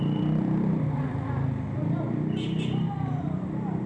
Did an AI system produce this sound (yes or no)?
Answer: no